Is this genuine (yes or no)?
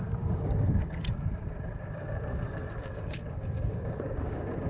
no